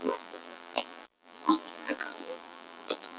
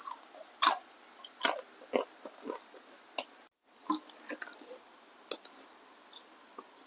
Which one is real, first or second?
second